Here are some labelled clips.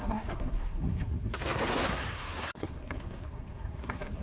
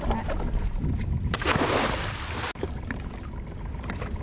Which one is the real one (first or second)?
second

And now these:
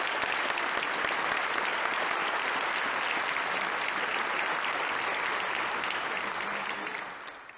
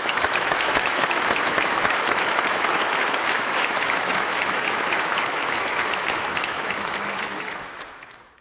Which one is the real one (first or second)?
first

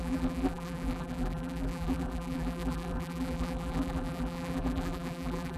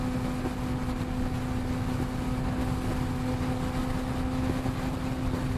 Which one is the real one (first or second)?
second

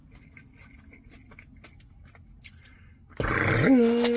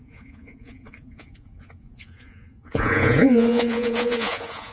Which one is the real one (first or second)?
first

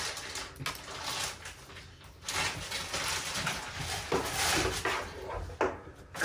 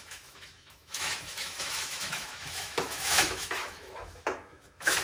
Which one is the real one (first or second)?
first